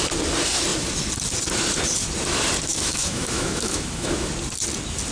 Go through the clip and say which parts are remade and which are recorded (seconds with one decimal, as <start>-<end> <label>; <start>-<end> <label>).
0.0-2.7 recorded; 2.7-4.3 remade; 4.3-5.1 recorded